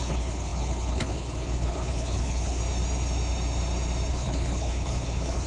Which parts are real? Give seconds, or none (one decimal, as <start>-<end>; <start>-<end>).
2.6-4.1